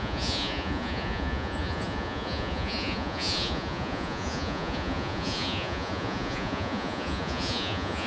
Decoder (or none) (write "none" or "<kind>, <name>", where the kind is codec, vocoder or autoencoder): vocoder, Vocos